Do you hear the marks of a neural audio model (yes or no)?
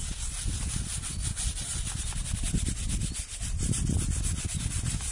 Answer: no